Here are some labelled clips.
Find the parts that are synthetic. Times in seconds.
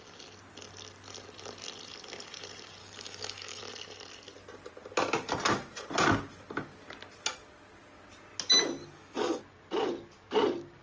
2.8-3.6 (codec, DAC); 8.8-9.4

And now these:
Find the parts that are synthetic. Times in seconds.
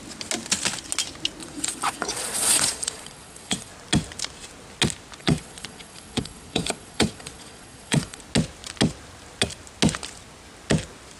1.4-3.7 (vocoder, Vocos); 5.2-8.2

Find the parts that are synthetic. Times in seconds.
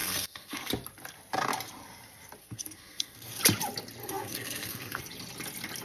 0.0-0.7 (codec, SNAC); 2.4-3.4; 4.0-5.0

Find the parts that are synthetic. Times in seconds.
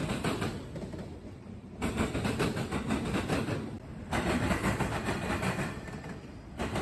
0.0-6.8 (vocoder, BigVGAN v2)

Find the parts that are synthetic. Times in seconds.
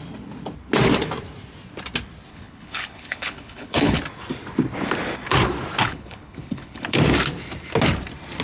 2.3-4.0 (codec, HILCodec); 5.8-7.0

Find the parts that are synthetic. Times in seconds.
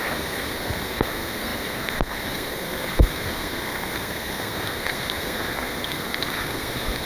0.0-7.1 (codec, SNAC)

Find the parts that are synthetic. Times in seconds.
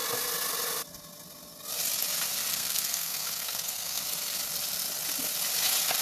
2.5-4.0 (codec, SNAC)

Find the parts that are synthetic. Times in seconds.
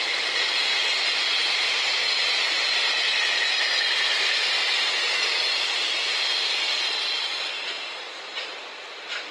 none